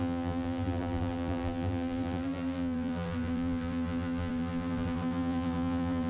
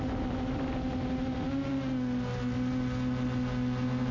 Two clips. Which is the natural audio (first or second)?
second